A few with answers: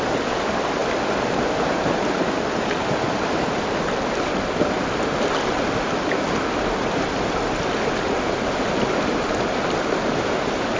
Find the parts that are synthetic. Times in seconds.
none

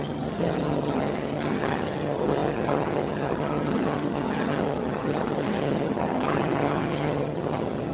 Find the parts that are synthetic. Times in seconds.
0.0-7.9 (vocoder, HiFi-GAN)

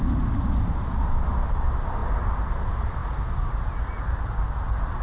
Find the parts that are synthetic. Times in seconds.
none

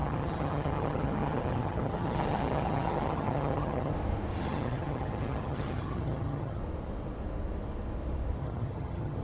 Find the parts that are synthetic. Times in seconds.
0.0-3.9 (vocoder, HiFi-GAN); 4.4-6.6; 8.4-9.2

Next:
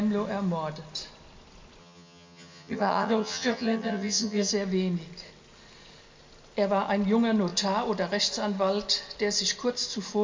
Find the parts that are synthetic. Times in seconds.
1.8-4.5 (vocoder, HiFi-GAN)

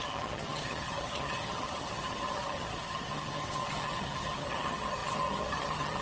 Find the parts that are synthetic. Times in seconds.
0.0-6.0 (vocoder, HiFi-GAN)

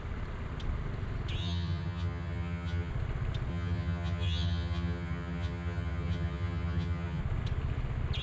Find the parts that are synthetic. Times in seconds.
1.4-2.9 (vocoder, HiFi-GAN); 3.5-7.2

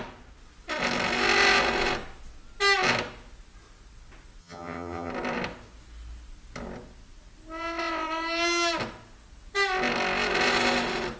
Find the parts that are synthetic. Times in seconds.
4.4-5.1 (vocoder, HiFi-GAN)